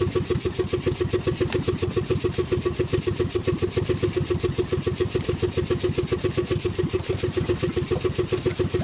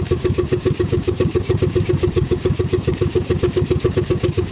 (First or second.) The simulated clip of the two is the second